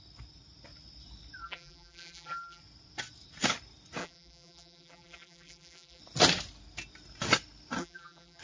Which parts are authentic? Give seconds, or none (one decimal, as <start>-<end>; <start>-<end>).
0.0-1.4; 2.6-4.0; 6.0-7.8